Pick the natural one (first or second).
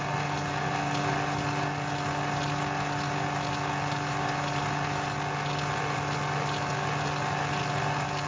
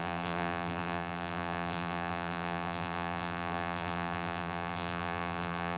first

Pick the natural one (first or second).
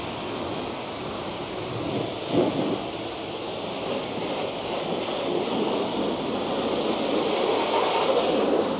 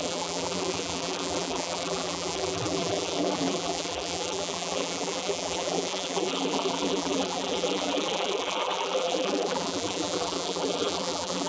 first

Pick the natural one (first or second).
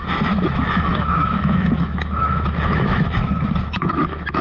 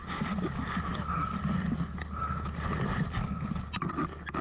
second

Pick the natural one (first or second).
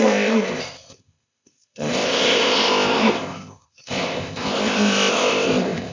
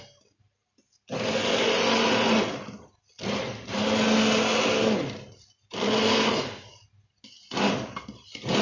second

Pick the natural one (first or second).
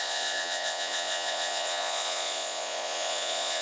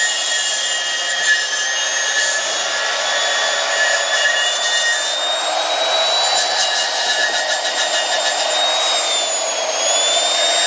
second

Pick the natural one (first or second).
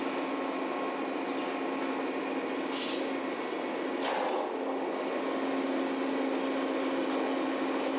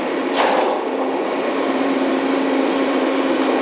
first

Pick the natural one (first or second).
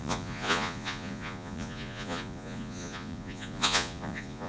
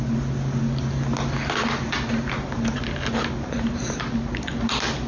second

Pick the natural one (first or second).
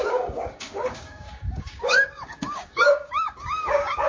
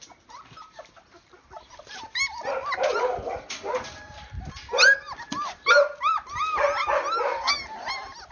second